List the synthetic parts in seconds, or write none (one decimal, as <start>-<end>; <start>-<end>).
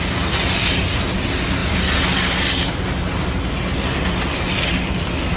none